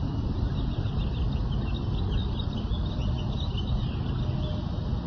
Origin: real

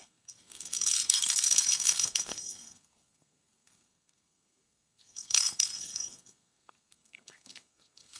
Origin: fake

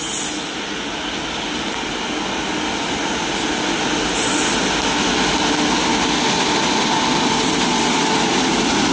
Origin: real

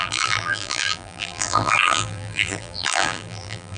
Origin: fake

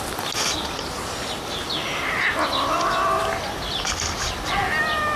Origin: real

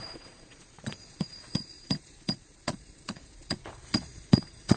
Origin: fake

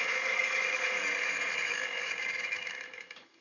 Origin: fake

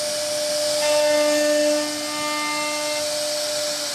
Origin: real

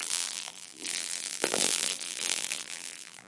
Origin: fake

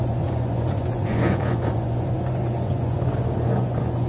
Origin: fake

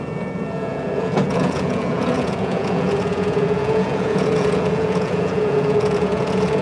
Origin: fake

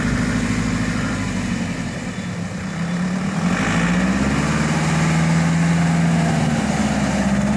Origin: real